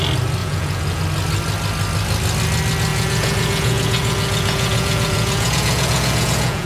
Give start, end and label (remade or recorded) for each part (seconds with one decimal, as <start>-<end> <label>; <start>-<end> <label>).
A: 0.0-0.4 recorded; 0.4-1.0 remade; 1.0-2.9 recorded; 2.9-6.7 remade